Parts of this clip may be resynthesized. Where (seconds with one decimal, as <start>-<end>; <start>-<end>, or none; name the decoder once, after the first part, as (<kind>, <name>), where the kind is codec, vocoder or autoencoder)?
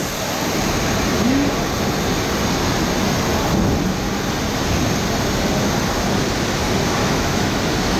7.0-7.6 (autoencoder, DAC-VAE)